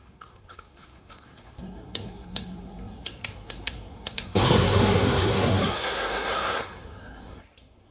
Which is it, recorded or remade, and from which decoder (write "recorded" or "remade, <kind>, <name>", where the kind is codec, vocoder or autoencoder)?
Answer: remade, codec, SNAC